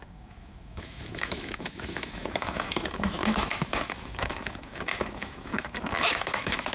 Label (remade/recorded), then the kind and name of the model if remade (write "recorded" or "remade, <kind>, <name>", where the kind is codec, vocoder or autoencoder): remade, autoencoder, DAC-VAE